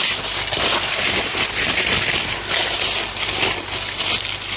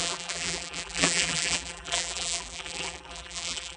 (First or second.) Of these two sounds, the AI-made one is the second